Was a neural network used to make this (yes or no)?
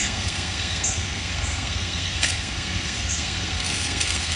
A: yes